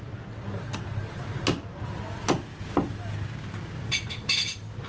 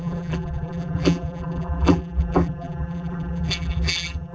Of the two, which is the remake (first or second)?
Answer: second